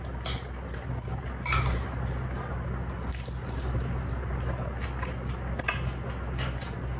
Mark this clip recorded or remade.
recorded